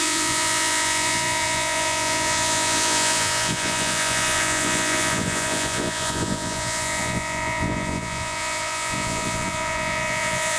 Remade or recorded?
remade